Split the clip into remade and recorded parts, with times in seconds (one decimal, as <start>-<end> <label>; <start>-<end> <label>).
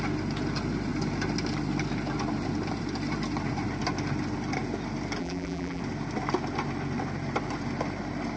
0.0-5.2 recorded; 5.2-5.8 remade; 5.8-8.4 recorded